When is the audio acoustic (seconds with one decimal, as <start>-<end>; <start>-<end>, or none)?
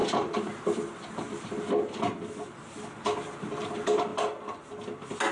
0.0-5.3